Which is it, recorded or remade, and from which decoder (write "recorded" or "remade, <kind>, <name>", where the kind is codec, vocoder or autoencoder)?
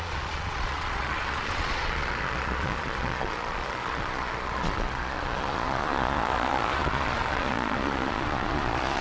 remade, vocoder, Vocos